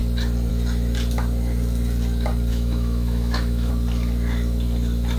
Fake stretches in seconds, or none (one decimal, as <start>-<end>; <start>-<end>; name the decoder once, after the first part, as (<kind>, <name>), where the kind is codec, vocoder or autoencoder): 2.5-3.7 (autoencoder, DAC-VAE)